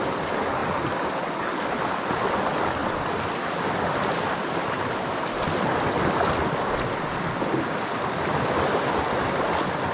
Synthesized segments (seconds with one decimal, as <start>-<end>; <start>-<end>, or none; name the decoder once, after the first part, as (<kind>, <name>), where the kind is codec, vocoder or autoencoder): none